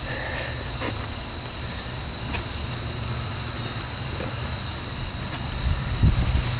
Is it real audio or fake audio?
real